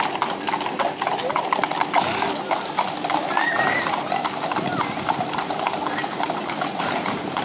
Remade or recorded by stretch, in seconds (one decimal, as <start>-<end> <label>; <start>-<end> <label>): 0.0-7.4 recorded